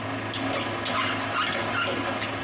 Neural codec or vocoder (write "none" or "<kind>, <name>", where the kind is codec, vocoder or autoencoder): none